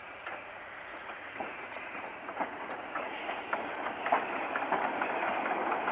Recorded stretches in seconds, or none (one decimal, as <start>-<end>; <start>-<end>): 3.4-5.9

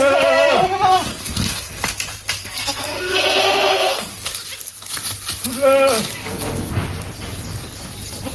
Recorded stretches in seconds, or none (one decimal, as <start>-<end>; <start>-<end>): 0.0-1.1; 1.8-2.4; 4.1-6.2; 6.7-8.3

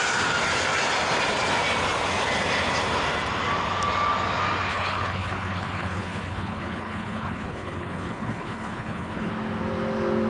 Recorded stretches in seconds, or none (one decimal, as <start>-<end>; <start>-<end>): 0.0-4.7; 9.3-10.3

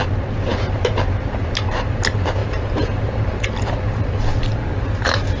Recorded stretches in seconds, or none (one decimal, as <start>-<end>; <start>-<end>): none

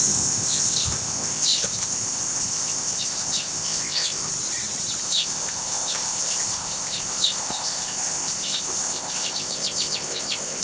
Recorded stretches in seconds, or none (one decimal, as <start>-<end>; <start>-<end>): 4.3-5.0

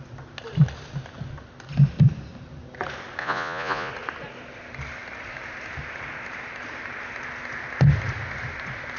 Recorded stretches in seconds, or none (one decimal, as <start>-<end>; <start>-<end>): 0.0-3.2; 3.9-9.0

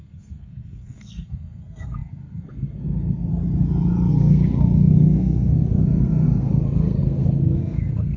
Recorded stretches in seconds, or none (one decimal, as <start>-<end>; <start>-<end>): 3.3-4.1